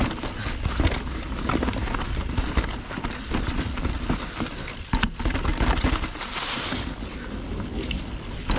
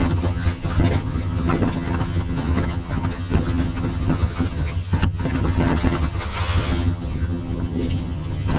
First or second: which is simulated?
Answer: second